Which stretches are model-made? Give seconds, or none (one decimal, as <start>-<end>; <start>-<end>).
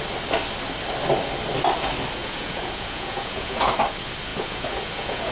2.2-3.7; 4.3-5.3